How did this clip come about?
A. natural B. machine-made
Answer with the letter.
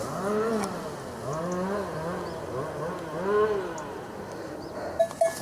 A